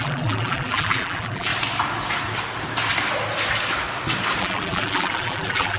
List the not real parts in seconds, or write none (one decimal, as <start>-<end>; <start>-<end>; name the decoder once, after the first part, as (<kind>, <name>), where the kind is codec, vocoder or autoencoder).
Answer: 0.0-1.5 (vocoder, BigVGAN v2); 4.4-5.8